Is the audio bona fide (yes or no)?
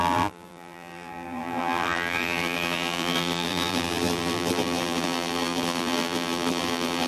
no